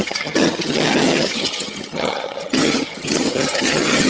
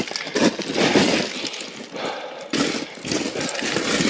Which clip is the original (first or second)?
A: second